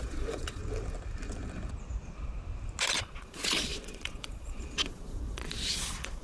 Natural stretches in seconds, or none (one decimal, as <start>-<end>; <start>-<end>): 0.6-3.0